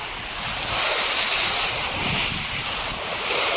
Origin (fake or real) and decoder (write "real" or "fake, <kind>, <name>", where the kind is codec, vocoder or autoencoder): real